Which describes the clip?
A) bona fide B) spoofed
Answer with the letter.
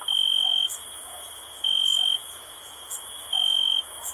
B